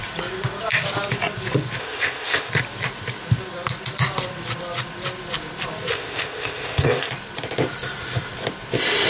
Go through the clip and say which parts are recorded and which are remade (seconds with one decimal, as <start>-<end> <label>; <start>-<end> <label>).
0.0-1.8 recorded; 1.8-2.5 remade; 2.5-5.9 recorded; 5.9-7.1 remade; 7.1-9.1 recorded

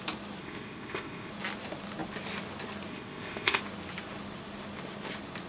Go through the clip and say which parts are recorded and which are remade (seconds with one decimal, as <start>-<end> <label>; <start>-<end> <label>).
0.0-0.4 recorded; 0.4-1.3 remade; 1.3-2.9 recorded; 2.9-3.6 remade; 3.6-5.5 recorded

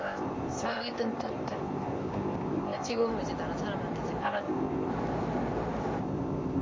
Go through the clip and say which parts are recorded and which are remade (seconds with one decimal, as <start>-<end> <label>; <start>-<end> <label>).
0.0-3.1 remade; 3.1-4.2 recorded; 4.2-4.9 remade; 4.9-6.0 recorded; 6.0-6.6 remade

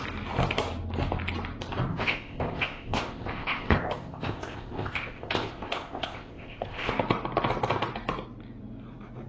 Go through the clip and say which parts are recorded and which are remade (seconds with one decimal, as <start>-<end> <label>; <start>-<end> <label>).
0.0-1.9 recorded; 1.9-6.9 remade; 6.9-9.3 recorded

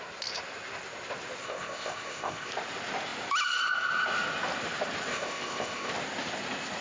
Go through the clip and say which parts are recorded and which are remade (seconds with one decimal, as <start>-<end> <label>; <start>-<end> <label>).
0.0-1.4 recorded; 1.4-2.5 remade; 2.5-5.1 recorded; 5.1-5.9 remade; 5.9-6.8 recorded

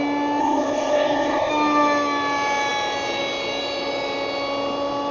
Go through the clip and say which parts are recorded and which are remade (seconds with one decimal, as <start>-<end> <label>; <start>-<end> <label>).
0.0-0.4 recorded; 0.4-1.5 remade; 1.5-5.1 recorded